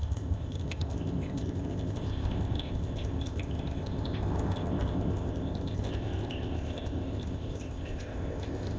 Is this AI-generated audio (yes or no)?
yes